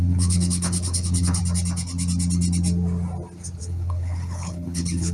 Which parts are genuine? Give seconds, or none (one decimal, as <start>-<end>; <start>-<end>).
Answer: 1.4-3.6